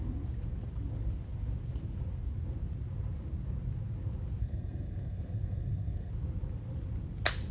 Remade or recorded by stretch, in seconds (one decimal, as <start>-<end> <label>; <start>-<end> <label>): 0.0-4.4 recorded; 4.4-6.1 remade; 6.1-7.5 recorded